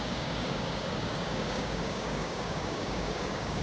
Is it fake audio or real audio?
fake